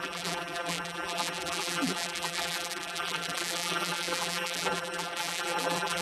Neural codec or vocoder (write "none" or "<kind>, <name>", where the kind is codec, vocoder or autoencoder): vocoder, BigVGAN v2